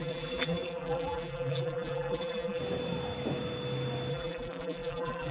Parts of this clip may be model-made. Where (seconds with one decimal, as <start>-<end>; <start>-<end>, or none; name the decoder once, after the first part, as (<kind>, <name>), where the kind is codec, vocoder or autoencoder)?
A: 0.0-2.6 (vocoder, BigVGAN v2); 4.1-5.3